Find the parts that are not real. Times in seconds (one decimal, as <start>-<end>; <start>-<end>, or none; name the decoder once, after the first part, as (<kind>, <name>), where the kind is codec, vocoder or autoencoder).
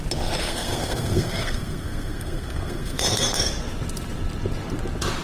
0.4-3.5 (codec, SNAC)